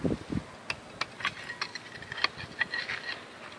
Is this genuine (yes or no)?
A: yes